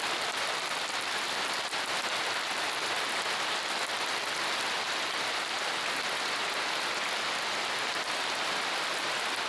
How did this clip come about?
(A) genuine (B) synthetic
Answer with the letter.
A